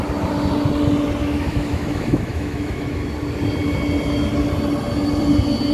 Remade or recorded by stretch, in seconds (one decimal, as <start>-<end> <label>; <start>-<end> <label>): 0.0-1.2 recorded; 1.2-3.1 remade; 3.1-5.7 recorded